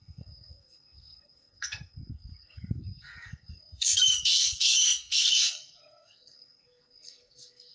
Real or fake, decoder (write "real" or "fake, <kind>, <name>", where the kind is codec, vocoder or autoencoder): fake, codec, SNAC